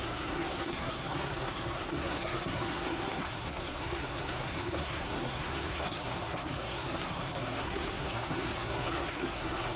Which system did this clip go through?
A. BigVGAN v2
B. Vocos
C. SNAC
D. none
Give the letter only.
C